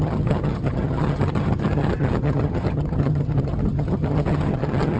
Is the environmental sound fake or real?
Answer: fake